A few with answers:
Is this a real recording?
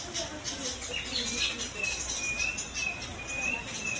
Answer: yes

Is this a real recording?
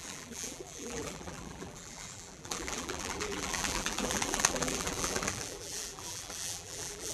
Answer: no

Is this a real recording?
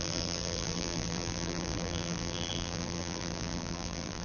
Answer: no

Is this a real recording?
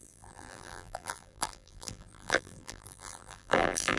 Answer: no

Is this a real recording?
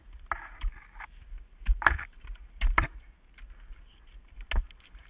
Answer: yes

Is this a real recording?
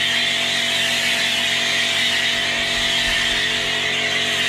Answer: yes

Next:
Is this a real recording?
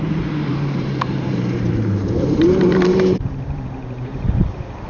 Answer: no